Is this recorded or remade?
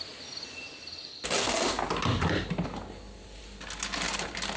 recorded